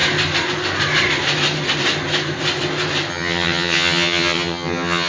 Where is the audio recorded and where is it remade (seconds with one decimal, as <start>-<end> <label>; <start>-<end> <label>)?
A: 0.0-3.1 recorded; 3.1-5.1 remade